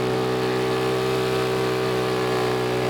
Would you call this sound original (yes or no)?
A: yes